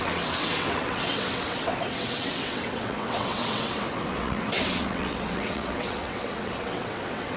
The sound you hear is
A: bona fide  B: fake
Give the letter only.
B